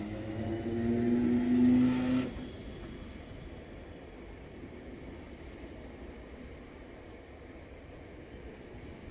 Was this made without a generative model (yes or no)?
yes